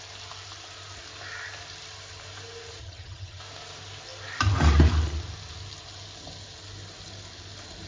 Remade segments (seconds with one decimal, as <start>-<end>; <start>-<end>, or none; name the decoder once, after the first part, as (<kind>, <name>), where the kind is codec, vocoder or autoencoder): 2.8-3.4 (vocoder, HiFi-GAN)